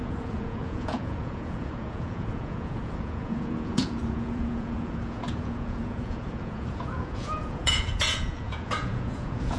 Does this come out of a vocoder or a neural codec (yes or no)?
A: yes